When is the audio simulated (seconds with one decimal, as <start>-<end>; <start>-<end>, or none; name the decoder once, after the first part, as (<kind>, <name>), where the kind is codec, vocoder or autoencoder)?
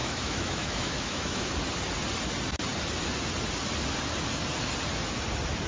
0.0-1.4 (autoencoder, DAC-VAE)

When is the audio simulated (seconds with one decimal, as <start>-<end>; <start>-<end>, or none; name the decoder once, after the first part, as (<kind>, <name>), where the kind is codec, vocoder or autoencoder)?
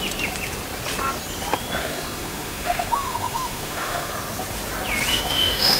1.8-4.1 (autoencoder, DAC-VAE); 5.1-5.8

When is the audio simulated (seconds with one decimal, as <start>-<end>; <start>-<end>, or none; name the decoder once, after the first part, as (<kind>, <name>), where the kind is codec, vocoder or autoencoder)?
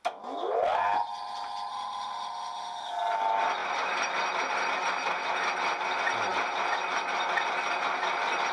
1.7-2.9 (autoencoder, DAC-VAE)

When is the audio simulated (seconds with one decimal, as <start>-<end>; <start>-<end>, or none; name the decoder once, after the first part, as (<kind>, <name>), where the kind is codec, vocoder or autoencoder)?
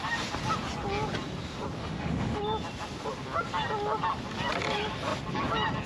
1.8-2.4 (autoencoder, DAC-VAE)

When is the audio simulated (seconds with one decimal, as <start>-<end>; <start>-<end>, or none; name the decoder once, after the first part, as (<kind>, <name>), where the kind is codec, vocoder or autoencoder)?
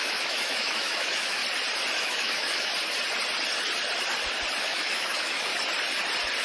0.0-1.4 (autoencoder, DAC-VAE); 2.0-2.7; 4.6-5.5